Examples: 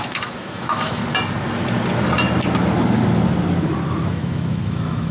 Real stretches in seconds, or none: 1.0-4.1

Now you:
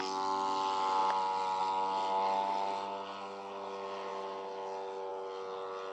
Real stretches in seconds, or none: 0.0-5.9

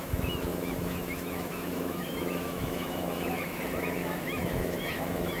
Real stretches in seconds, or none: none

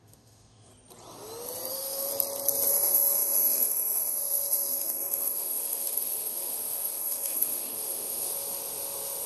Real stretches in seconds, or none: 0.7-1.7; 2.1-2.7

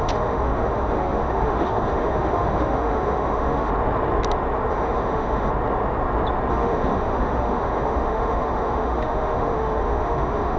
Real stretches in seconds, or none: 3.7-4.7; 5.5-6.5

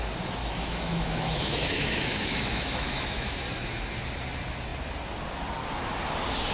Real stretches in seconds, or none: 0.0-0.4; 3.4-6.5

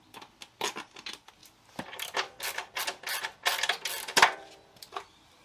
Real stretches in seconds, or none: 0.0-5.4

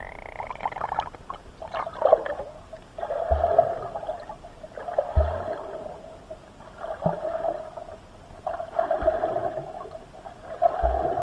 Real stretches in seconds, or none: 0.0-9.4; 9.9-11.2